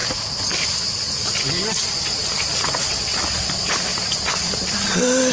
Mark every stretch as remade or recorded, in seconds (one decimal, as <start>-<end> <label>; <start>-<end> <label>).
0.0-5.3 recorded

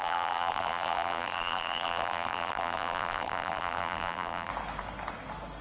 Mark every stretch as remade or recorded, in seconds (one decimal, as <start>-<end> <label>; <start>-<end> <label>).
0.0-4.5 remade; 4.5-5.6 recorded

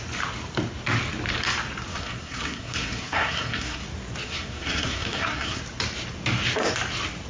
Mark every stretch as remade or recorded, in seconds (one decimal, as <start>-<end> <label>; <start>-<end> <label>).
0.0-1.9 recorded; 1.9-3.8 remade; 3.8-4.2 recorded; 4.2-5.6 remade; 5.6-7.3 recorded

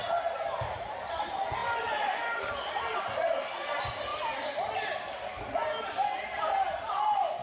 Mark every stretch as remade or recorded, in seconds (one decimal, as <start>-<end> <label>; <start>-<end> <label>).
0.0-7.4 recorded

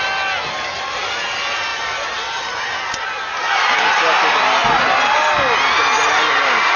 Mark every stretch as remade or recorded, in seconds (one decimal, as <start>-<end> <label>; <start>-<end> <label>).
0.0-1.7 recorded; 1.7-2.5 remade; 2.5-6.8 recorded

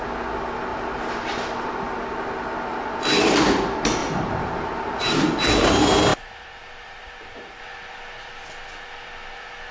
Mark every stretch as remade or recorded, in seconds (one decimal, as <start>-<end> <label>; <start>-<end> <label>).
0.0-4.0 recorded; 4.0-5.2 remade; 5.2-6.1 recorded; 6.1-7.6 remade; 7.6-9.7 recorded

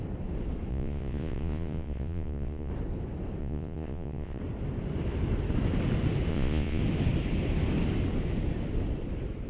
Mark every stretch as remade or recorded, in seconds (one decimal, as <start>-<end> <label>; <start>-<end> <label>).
0.0-0.7 recorded; 0.7-2.7 remade; 2.7-3.4 recorded; 3.4-4.4 remade; 4.4-6.3 recorded; 6.3-6.8 remade; 6.8-9.5 recorded